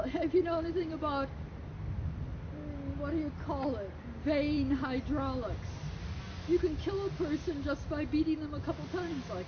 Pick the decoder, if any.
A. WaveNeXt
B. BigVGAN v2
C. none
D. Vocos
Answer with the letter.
C